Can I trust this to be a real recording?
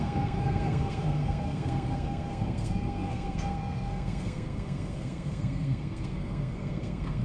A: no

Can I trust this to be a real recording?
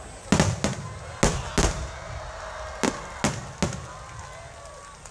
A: yes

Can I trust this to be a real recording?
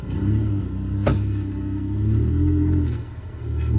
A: no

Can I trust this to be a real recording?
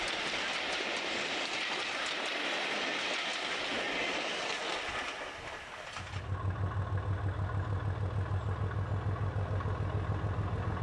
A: yes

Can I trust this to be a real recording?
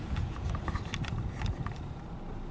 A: yes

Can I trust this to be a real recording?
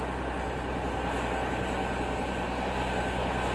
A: yes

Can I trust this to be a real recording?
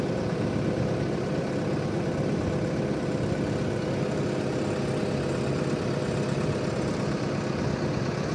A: yes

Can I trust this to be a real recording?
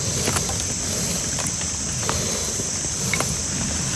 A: yes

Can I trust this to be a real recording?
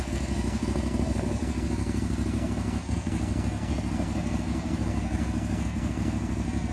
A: no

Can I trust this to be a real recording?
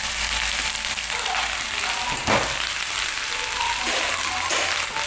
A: yes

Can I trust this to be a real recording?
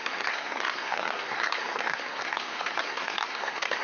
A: no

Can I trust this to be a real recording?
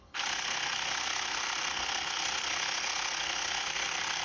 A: no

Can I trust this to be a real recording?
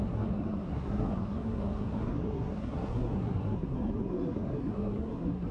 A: no